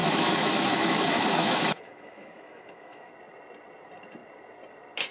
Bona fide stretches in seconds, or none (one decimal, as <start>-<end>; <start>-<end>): 3.1-5.1

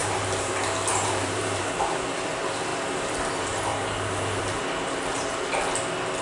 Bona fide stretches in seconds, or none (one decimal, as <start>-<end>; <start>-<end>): 0.5-0.9; 1.6-3.7; 4.4-6.2

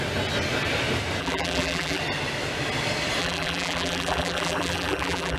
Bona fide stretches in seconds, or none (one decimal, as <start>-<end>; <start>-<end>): 0.0-1.2; 2.0-3.2